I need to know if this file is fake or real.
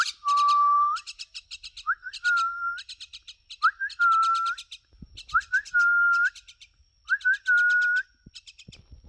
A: real